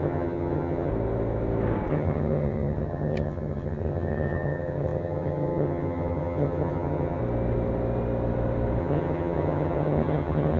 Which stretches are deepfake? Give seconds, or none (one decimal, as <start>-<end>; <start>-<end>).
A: 0.0-0.9; 1.9-7.2; 8.8-10.6